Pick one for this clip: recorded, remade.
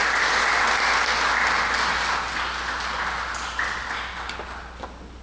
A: recorded